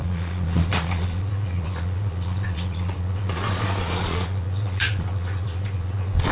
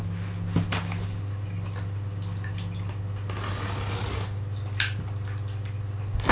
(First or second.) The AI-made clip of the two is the first